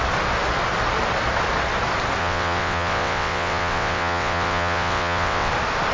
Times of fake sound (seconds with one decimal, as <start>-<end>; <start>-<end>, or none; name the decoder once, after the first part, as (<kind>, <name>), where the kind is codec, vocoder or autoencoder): 2.2-5.5 (vocoder, WaveNeXt)